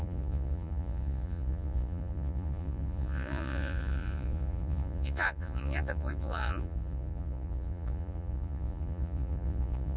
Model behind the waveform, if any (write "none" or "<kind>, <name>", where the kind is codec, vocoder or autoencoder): vocoder, Vocos